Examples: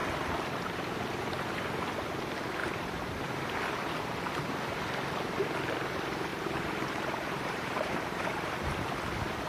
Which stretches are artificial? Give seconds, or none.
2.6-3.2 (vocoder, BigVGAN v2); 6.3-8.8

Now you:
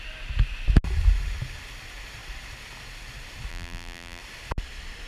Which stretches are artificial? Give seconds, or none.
3.5-4.2 (vocoder, BigVGAN v2)

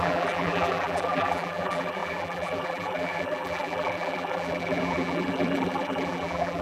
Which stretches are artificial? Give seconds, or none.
0.0-6.6 (vocoder, BigVGAN v2)

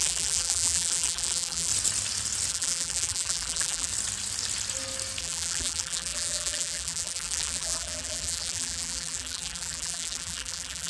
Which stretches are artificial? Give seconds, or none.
0.0-1.7 (vocoder, BigVGAN v2); 2.5-3.9; 5.2-10.9

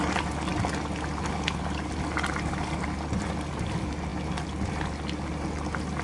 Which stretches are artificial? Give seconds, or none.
none